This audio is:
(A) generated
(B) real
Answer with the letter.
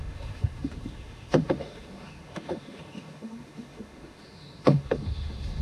A